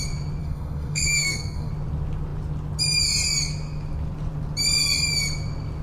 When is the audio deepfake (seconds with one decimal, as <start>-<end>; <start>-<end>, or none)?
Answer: 0.4-1.7